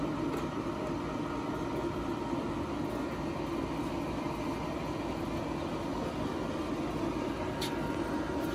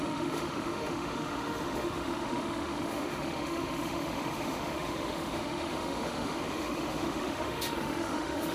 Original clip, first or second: first